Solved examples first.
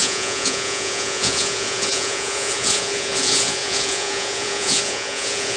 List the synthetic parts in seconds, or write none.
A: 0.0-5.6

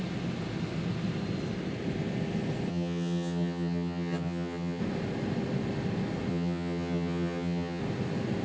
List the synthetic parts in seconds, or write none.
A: 2.7-4.8; 6.3-7.8

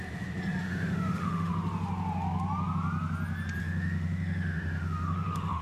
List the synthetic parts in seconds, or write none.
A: 0.6-1.5; 3.6-5.6